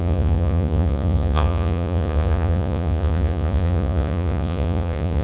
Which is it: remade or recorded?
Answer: remade